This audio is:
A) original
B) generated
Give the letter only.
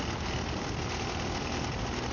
A